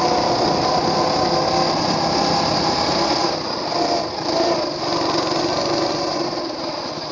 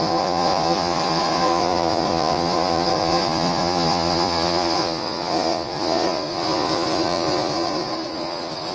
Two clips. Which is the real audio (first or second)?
first